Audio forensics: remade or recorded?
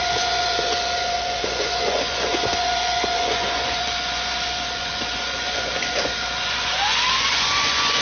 remade